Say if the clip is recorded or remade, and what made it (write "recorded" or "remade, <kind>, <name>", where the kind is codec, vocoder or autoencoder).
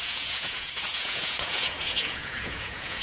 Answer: remade, vocoder, Vocos